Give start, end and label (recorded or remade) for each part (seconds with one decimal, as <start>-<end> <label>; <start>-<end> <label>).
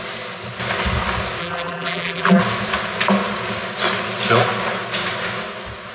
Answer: 0.0-1.4 recorded; 1.4-2.4 remade; 2.4-5.9 recorded